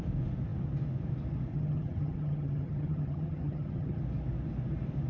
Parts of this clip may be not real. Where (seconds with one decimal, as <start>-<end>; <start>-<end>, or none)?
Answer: 1.5-4.0